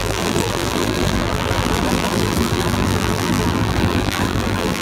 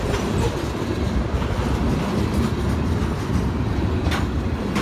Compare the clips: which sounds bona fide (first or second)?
second